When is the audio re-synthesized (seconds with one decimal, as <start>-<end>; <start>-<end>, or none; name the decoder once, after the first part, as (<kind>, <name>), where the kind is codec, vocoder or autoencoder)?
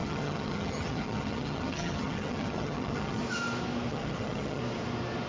0.0-3.2 (vocoder, HiFi-GAN); 3.9-4.6